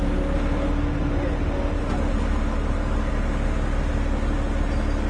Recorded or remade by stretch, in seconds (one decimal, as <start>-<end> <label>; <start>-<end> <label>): 0.0-5.1 recorded